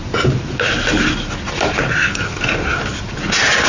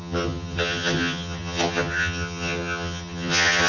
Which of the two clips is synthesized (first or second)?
second